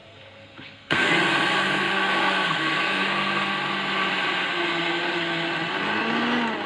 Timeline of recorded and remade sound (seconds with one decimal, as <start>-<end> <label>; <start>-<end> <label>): 0.0-1.1 remade; 1.1-1.5 recorded; 1.5-3.5 remade; 3.5-6.7 recorded